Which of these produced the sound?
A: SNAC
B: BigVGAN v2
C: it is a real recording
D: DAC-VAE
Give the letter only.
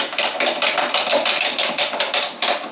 C